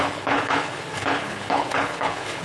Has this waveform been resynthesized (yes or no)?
yes